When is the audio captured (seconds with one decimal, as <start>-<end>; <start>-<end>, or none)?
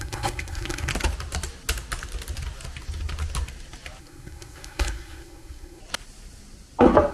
0.9-4.0; 5.8-7.1